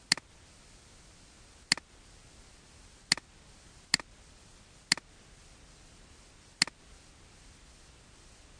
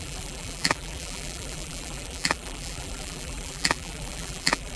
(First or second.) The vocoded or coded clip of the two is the second